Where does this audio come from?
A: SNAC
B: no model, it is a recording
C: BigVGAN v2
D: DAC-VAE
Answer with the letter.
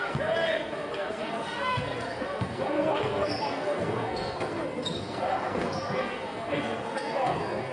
A